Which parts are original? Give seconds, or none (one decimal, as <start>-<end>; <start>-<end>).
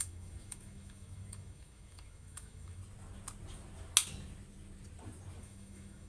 2.8-5.4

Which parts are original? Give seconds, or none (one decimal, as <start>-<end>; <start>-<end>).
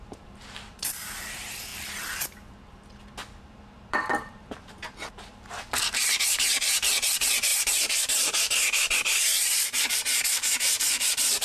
1.7-3.4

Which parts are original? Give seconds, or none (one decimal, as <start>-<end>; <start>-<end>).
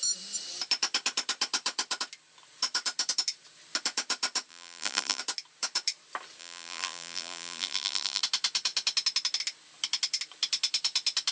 0.0-4.5; 5.2-6.4; 8.2-11.3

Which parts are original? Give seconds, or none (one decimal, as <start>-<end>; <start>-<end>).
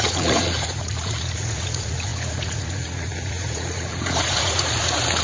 none